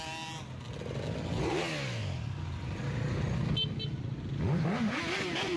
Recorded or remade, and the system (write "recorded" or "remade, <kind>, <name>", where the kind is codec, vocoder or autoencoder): recorded